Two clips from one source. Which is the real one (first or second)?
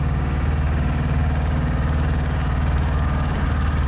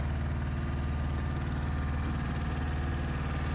second